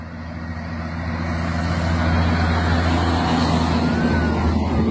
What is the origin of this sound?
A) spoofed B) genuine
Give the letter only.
B